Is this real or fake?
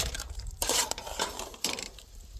fake